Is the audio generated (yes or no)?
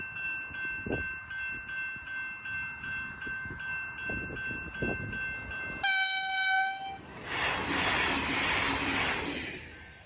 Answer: no